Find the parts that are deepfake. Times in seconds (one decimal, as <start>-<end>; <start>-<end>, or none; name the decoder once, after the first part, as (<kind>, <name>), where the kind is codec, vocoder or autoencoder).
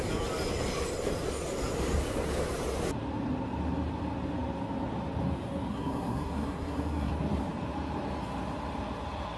5.7-7.1 (codec, SNAC)